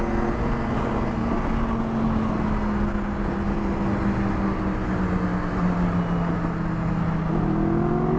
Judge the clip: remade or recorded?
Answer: recorded